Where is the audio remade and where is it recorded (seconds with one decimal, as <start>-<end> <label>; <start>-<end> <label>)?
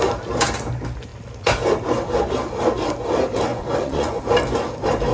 0.0-3.5 recorded; 3.5-4.2 remade; 4.2-5.1 recorded